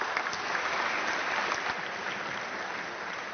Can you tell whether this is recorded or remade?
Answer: recorded